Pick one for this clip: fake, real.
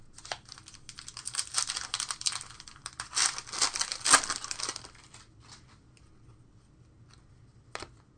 real